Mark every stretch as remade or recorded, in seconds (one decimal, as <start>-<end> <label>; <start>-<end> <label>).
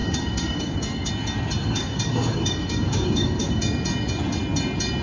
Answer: 0.0-1.1 remade; 1.1-1.6 recorded; 1.6-3.6 remade; 3.6-5.0 recorded